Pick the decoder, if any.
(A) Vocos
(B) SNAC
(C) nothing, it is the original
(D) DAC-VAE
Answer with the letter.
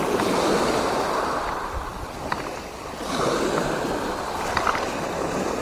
C